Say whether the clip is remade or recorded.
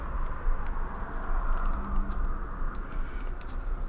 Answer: recorded